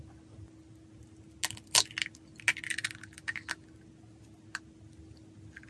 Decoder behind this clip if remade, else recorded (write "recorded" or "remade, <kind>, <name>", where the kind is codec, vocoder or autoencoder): recorded